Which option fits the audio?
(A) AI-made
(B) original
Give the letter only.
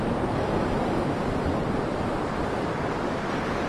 B